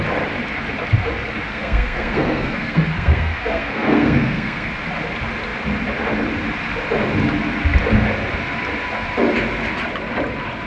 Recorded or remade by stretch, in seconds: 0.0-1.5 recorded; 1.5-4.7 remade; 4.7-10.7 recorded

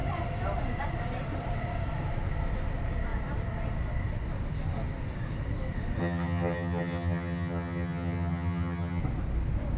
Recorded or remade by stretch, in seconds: 0.0-6.0 recorded; 6.0-9.0 remade; 9.0-9.8 recorded

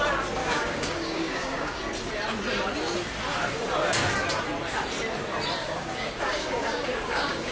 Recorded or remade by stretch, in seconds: 0.0-0.4 recorded; 0.4-1.8 remade; 1.8-5.6 recorded; 5.6-7.5 remade

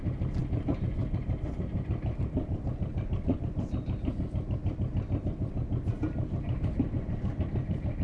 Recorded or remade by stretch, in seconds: 0.0-8.0 recorded